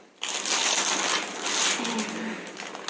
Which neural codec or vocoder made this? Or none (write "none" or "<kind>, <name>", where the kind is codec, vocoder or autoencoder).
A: none